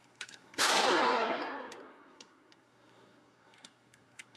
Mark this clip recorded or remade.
remade